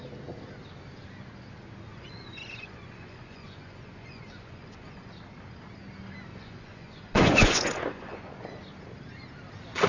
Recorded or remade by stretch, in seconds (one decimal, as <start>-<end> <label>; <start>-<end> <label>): 0.0-1.9 recorded; 1.9-5.1 remade; 5.1-6.3 recorded; 6.3-8.3 remade; 8.3-9.9 recorded